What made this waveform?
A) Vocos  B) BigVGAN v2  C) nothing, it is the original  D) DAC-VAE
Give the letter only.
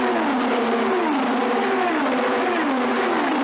C